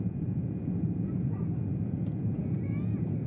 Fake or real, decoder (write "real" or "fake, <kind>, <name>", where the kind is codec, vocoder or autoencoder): fake, vocoder, Vocos